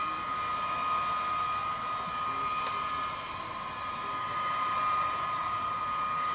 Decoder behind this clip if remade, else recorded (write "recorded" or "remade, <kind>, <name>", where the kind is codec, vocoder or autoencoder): recorded